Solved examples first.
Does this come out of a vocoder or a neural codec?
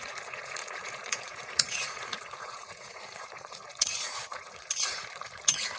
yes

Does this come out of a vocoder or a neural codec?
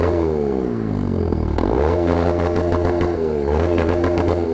yes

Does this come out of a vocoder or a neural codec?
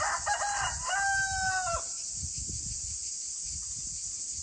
no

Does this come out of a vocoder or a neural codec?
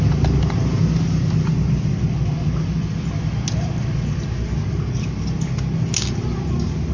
no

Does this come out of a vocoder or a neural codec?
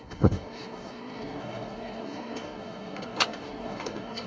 yes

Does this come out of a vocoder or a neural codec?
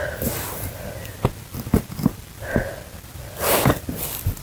no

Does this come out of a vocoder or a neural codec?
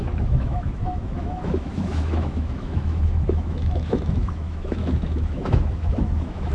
yes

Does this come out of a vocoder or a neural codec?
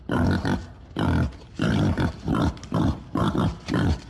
no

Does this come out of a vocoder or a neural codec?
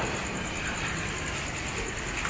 yes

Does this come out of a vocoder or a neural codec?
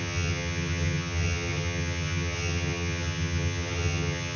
yes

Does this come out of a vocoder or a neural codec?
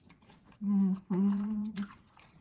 yes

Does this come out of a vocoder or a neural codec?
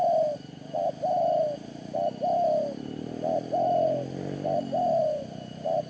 no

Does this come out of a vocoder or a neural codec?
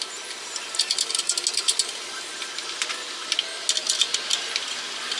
no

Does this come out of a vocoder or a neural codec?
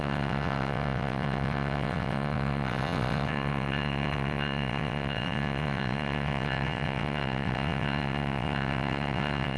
yes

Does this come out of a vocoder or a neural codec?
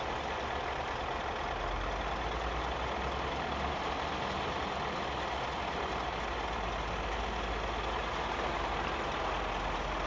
no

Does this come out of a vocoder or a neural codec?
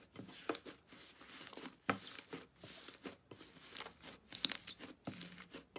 no